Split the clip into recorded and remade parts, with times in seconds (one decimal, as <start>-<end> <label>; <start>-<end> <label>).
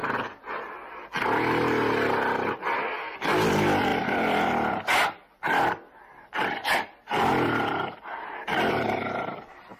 0.0-3.5 recorded; 3.5-9.8 remade